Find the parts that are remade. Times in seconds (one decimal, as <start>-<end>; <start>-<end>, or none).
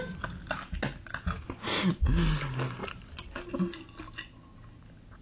none